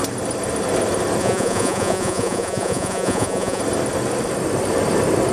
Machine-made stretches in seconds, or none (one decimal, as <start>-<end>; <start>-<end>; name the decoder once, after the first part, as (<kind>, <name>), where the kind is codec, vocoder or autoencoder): 1.2-3.6 (vocoder, Vocos)